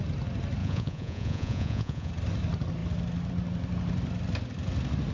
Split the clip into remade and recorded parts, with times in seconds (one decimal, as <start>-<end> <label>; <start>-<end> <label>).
0.0-0.6 recorded; 0.6-2.1 remade; 2.1-5.1 recorded